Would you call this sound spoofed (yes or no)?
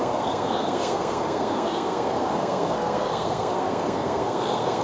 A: yes